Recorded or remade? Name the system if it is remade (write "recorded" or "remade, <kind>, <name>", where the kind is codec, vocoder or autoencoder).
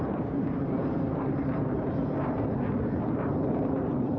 remade, vocoder, BigVGAN v2